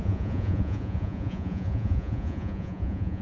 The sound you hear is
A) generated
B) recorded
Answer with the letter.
A